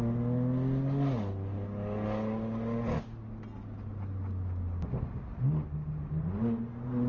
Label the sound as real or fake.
real